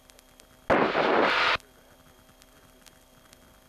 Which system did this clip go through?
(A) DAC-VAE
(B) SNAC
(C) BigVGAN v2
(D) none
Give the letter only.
D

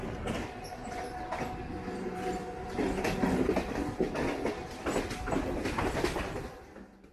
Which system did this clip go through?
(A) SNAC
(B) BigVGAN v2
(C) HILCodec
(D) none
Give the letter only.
D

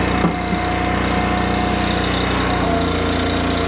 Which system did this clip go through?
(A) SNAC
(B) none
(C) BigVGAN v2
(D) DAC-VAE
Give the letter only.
B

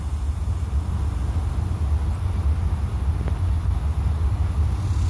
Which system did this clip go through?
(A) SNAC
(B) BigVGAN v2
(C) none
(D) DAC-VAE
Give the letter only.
C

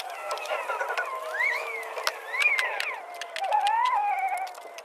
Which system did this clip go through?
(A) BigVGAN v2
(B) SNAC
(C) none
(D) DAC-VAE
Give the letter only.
C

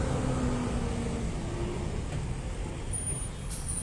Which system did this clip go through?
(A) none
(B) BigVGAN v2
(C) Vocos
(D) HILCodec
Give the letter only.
A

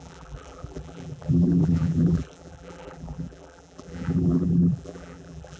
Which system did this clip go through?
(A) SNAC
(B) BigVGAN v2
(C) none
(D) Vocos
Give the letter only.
B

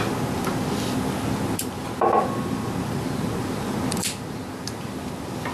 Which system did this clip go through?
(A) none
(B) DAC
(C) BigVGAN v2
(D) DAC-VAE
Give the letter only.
A